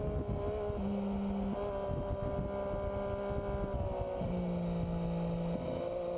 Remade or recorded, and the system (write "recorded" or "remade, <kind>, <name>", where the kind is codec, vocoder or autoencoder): recorded